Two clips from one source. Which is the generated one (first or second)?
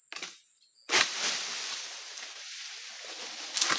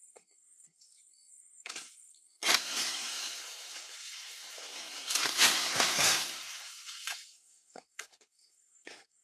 second